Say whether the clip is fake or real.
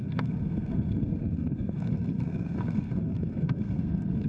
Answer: fake